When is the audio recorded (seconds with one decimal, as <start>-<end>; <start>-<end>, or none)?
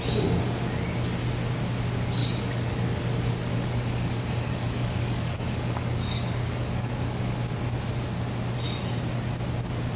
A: 0.0-2.2; 7.4-10.0